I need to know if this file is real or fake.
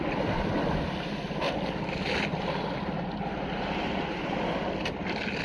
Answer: real